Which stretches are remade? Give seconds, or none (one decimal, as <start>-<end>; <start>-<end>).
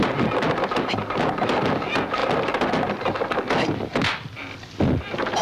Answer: none